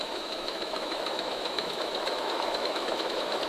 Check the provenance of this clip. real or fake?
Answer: fake